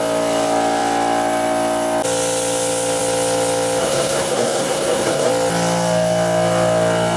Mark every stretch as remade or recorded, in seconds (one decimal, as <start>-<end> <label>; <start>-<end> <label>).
0.0-3.8 recorded; 3.8-5.3 remade; 5.3-7.2 recorded

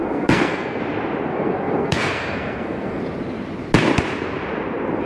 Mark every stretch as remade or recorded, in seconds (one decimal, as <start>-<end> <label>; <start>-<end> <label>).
0.0-0.8 remade; 0.8-1.3 recorded; 1.3-3.0 remade; 3.0-5.1 recorded

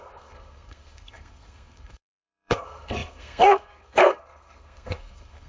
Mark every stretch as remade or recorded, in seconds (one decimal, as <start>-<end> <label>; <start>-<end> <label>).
0.0-5.5 remade

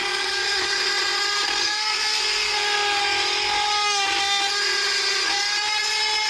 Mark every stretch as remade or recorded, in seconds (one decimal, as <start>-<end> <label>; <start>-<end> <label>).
0.0-0.6 remade; 0.6-1.6 recorded; 1.6-3.0 remade; 3.0-6.3 recorded

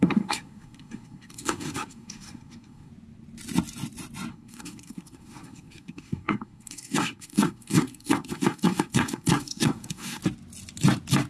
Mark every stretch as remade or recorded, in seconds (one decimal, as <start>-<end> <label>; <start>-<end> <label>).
0.0-2.9 remade; 2.9-4.3 recorded; 4.3-10.2 remade; 10.2-11.3 recorded